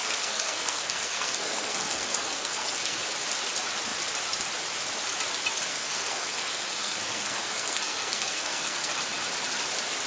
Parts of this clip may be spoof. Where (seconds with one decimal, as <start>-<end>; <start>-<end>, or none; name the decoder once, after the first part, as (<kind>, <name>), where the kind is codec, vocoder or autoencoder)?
0.0-3.0 (codec, SNAC); 5.7-9.0